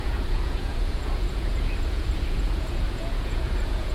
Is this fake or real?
fake